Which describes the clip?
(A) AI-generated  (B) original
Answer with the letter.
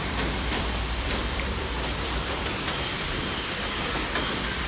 A